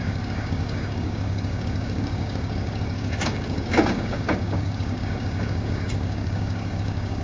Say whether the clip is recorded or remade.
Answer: remade